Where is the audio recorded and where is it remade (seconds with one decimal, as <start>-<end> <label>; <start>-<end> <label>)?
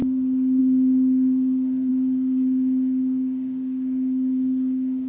0.0-5.1 remade